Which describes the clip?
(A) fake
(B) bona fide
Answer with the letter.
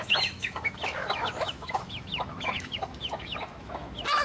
A